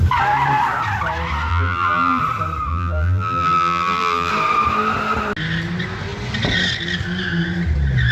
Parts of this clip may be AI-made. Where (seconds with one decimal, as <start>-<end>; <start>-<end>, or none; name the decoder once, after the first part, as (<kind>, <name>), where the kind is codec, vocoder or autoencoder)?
1.5-2.2 (vocoder, BigVGAN v2); 2.7-4.3